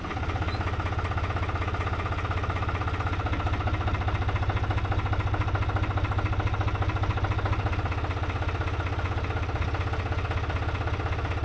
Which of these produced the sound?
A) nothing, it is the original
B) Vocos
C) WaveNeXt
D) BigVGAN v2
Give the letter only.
A